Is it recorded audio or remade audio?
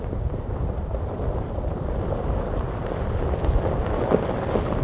recorded